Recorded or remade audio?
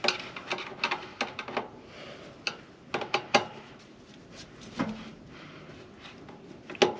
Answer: recorded